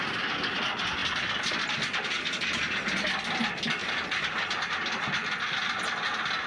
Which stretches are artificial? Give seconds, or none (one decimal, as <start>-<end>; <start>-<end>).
none